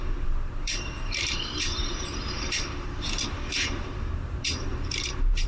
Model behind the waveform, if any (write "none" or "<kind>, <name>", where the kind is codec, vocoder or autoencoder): vocoder, BigVGAN v2